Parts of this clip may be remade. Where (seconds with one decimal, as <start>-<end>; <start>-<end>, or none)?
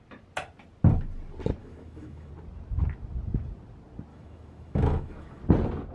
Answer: 1.6-2.3; 4.1-5.4